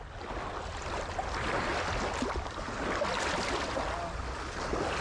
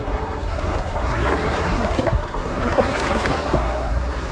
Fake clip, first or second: second